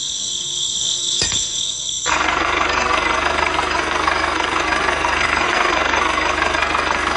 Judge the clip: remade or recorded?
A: remade